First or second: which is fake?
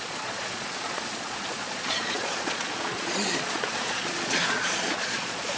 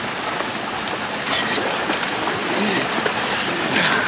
first